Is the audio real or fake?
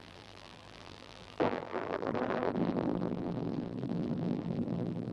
fake